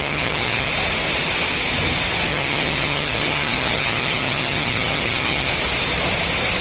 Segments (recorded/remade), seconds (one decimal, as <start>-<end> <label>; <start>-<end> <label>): 0.0-0.7 remade; 0.7-2.3 recorded; 2.3-5.5 remade; 5.5-6.6 recorded